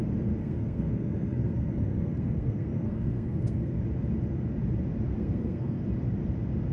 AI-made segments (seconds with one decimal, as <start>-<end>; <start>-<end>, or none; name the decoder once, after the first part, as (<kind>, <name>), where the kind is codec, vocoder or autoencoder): 0.4-3.8 (codec, SNAC); 5.1-5.8